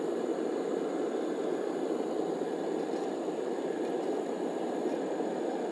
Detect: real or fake real